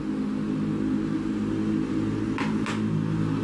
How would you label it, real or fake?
real